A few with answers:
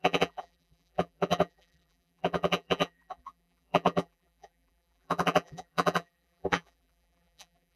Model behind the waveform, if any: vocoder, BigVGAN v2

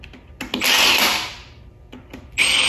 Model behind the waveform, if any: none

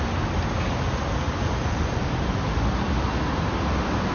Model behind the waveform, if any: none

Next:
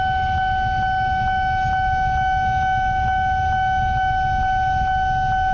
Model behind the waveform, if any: none